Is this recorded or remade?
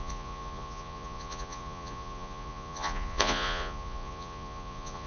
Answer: remade